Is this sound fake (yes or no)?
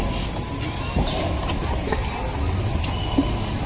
no